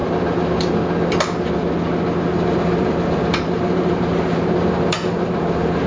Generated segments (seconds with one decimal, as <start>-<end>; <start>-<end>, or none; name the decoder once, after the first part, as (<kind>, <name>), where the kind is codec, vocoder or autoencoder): 2.3-5.9 (vocoder, BigVGAN v2)

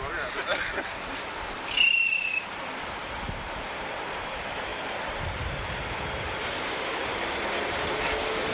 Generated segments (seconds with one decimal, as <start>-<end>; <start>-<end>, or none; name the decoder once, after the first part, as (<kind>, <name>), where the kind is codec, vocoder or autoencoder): 1.9-2.6 (vocoder, BigVGAN v2)

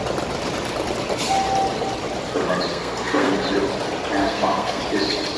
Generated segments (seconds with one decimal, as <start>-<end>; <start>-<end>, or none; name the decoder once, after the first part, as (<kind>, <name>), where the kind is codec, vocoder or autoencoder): 2.7-3.3 (codec, SNAC); 4.2-4.8

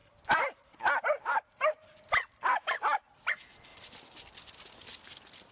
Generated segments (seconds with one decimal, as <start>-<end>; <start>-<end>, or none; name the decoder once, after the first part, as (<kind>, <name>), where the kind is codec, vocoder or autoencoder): none

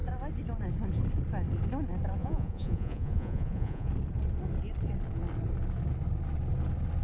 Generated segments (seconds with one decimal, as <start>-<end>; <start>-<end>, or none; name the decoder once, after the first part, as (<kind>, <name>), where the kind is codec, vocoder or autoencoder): 2.2-3.9 (vocoder, Vocos)